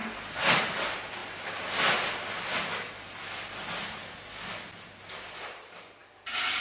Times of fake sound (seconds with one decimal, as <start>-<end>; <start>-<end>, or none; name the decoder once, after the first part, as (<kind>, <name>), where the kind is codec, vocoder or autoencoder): none